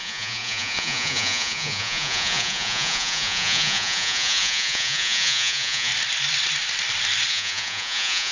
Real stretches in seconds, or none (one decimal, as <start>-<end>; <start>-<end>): 5.9-7.3